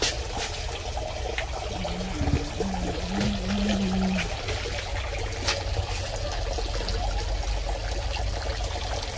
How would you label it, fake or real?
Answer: real